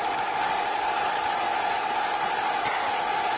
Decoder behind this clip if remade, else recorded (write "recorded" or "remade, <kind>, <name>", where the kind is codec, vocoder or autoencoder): recorded